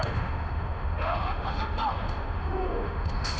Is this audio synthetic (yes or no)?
yes